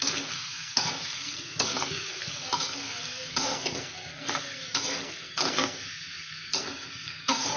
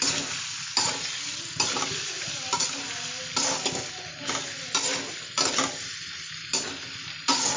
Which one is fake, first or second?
first